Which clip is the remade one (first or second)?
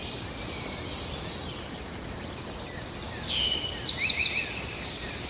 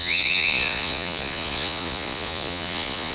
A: second